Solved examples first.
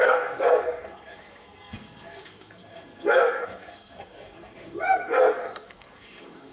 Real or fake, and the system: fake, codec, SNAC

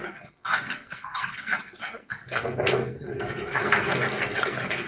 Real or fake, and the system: fake, codec, SNAC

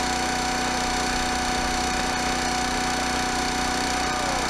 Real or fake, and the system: real